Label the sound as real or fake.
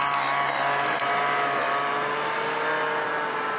real